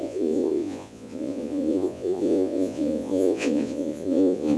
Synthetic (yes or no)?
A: yes